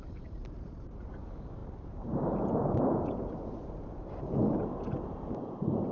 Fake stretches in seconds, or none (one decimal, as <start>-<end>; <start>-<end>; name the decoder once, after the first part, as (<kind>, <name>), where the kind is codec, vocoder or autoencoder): 0.0-4.4 (vocoder, BigVGAN v2); 5.1-5.9